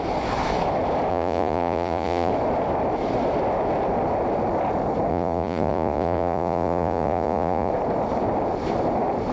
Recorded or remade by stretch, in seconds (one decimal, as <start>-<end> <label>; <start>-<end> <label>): 0.0-1.1 recorded; 1.1-2.3 remade; 2.3-5.1 recorded; 5.1-7.7 remade; 7.7-9.3 recorded